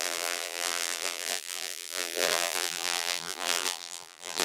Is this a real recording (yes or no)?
no